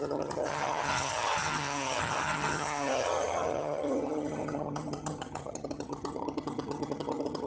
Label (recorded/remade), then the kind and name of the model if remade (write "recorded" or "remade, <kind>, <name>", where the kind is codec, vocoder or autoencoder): remade, vocoder, HiFi-GAN